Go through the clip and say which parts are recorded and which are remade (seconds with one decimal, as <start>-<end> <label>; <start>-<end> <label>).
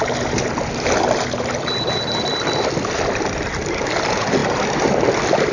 0.0-5.5 recorded